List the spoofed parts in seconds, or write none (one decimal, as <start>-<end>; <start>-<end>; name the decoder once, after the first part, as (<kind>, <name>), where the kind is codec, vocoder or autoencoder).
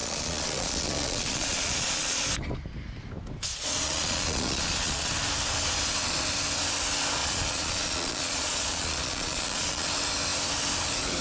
0.0-2.2 (vocoder, Vocos); 3.5-5.1; 7.2-9.9